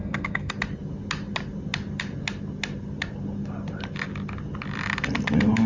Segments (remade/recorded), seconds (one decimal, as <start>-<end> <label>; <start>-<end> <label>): 0.0-0.5 remade; 0.5-5.7 recorded